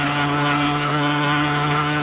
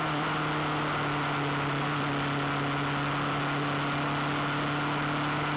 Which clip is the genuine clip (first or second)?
second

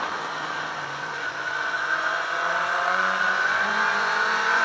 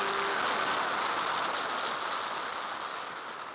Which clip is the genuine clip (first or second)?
second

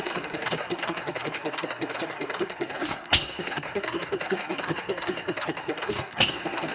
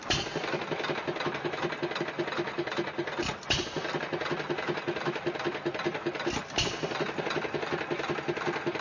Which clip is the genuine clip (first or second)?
second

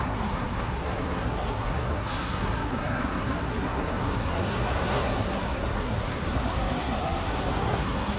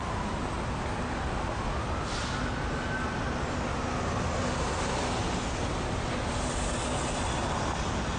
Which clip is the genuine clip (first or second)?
second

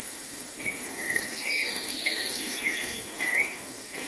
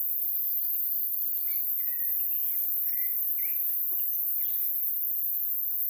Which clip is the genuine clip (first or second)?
second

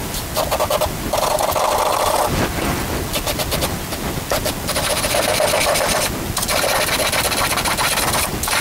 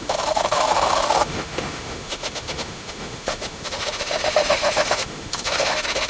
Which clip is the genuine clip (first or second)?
first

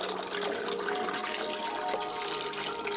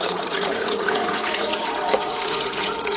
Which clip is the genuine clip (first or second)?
first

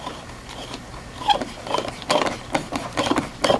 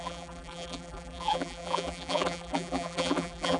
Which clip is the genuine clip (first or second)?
first